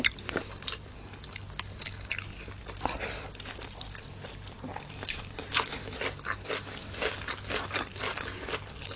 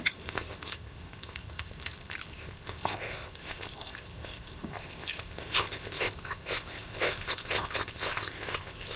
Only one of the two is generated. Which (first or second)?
second